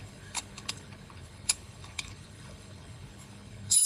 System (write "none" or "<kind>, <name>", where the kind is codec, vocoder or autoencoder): codec, HILCodec